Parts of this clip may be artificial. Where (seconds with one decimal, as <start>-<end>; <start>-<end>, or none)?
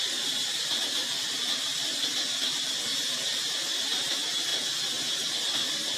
none